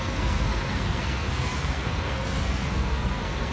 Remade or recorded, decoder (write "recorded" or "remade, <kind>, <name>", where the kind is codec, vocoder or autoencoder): remade, codec, SNAC